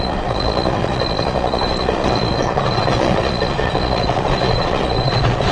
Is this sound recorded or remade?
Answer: remade